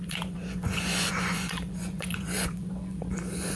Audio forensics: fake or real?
fake